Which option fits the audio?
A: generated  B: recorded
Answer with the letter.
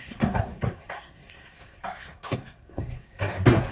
A